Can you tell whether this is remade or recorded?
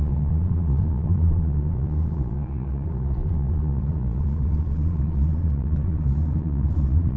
remade